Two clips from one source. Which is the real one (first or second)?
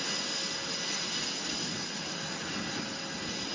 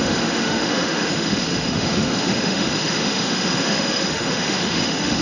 first